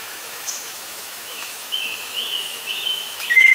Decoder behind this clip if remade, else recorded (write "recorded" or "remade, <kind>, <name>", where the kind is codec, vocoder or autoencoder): remade, autoencoder, DAC-VAE